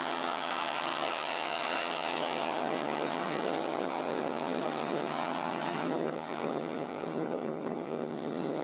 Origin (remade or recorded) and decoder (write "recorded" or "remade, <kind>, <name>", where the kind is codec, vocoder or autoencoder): remade, vocoder, HiFi-GAN